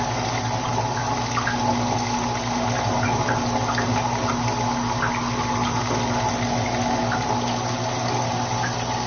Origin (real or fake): real